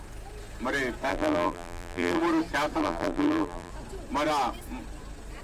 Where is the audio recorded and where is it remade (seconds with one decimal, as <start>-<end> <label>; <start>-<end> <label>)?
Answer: 0.0-1.1 recorded; 1.1-2.2 remade; 2.2-2.8 recorded; 2.8-3.7 remade; 3.7-5.4 recorded